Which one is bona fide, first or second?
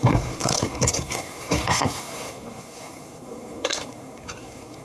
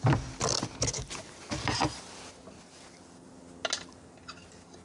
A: second